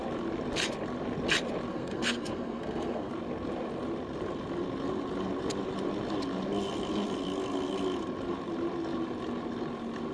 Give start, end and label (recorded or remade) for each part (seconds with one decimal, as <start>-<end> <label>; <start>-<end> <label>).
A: 0.0-1.7 recorded; 1.7-3.1 remade; 3.1-10.1 recorded